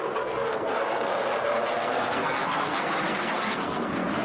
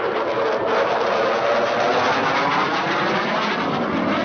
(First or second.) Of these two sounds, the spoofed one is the first